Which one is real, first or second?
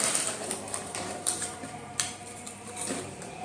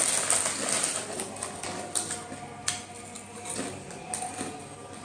second